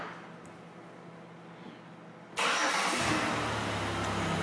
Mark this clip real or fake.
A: real